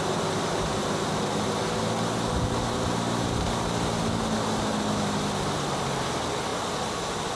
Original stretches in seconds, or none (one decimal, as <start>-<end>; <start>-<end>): 0.0-7.4